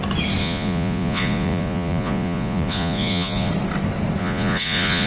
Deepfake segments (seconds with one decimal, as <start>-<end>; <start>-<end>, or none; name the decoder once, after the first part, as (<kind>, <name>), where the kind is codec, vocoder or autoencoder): 0.4-3.5 (vocoder, Vocos); 4.2-5.1